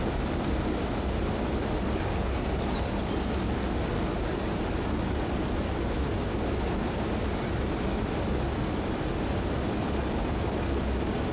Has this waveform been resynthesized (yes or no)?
no